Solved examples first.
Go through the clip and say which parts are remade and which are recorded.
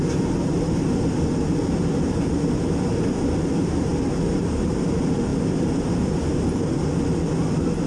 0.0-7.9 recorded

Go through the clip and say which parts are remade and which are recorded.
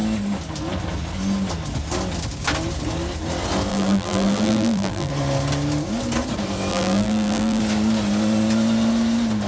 0.0-3.7 recorded; 3.7-5.1 remade; 5.1-6.7 recorded; 6.7-7.6 remade; 7.6-9.5 recorded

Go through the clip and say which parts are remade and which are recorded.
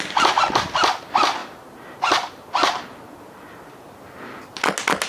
0.0-1.4 recorded; 1.4-4.0 remade; 4.0-5.1 recorded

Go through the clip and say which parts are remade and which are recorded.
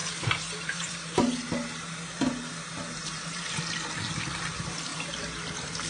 0.0-3.5 remade; 3.5-5.9 recorded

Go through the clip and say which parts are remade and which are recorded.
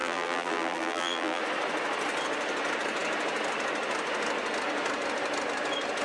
0.0-1.4 remade; 1.4-6.0 recorded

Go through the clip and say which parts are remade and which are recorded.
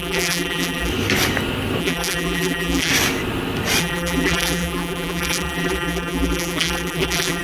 0.0-0.9 remade; 0.9-1.8 recorded; 1.8-2.9 remade; 2.9-3.8 recorded; 3.8-7.4 remade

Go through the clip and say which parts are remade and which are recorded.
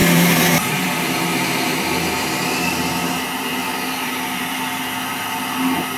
0.0-2.9 remade; 2.9-3.6 recorded; 3.6-4.8 remade; 4.8-6.0 recorded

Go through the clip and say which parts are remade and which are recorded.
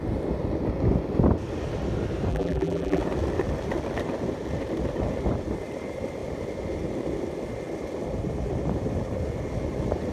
0.0-2.3 recorded; 2.3-3.0 remade; 3.0-10.1 recorded